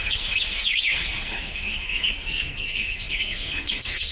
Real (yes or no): no